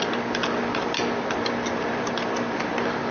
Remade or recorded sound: recorded